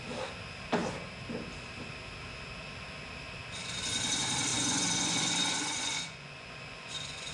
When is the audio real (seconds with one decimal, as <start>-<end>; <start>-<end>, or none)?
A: 0.0-4.5